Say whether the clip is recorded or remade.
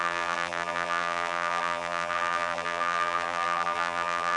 remade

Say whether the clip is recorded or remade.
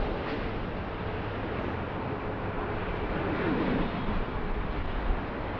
recorded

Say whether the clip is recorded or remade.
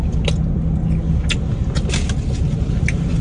recorded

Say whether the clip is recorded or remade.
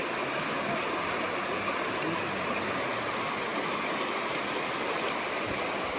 recorded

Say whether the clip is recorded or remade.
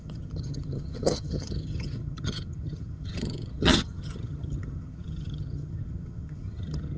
remade